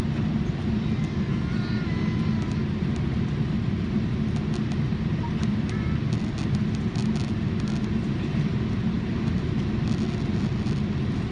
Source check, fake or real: real